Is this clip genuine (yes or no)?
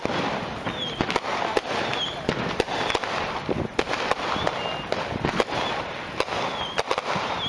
yes